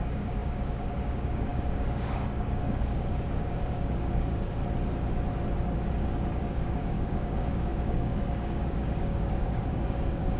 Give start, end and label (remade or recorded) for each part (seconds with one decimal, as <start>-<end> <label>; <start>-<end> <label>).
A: 0.0-4.6 remade; 4.6-5.9 recorded; 5.9-10.4 remade